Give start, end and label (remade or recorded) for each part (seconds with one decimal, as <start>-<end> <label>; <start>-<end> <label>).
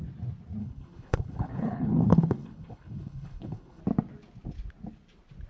0.0-0.6 recorded; 0.6-3.8 remade; 3.8-5.5 recorded